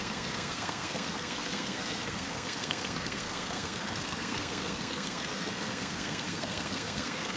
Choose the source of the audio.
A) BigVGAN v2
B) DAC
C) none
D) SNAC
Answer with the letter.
D